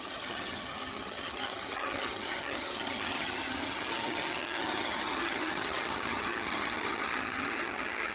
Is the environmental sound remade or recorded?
remade